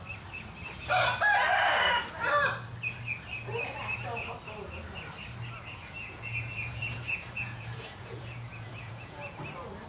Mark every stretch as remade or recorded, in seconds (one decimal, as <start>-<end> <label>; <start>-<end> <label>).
0.0-5.7 recorded; 5.7-9.4 remade; 9.4-9.9 recorded